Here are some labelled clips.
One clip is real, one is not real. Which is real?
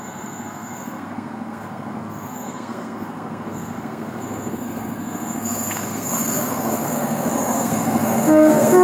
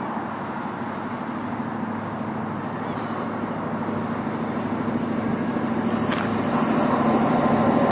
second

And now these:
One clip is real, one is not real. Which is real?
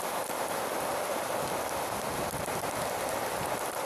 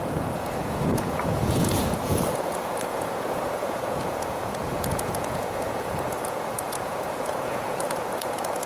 first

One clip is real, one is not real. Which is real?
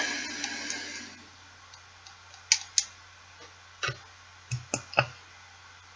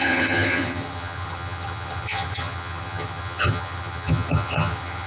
first